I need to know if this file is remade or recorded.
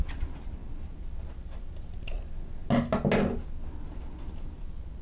recorded